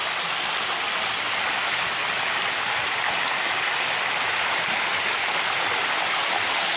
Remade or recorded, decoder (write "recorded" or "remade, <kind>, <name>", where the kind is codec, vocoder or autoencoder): recorded